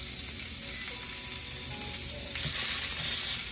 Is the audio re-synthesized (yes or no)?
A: no